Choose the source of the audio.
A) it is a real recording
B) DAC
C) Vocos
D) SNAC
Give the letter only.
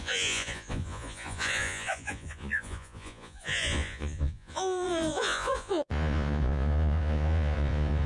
C